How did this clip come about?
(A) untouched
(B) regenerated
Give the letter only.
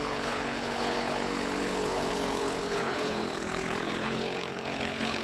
B